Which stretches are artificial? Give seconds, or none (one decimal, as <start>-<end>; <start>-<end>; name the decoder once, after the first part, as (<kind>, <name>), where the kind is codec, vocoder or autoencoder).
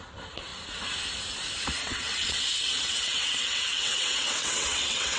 1.8-5.2 (vocoder, WaveNeXt)